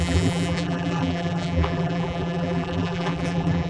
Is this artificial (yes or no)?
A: yes